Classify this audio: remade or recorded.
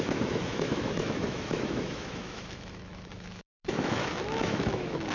remade